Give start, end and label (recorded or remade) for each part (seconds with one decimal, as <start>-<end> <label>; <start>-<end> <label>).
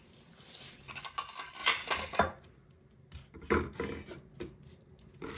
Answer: 0.0-5.4 recorded